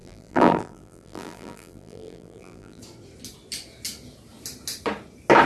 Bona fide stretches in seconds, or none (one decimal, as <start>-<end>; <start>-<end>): 2.8-5.5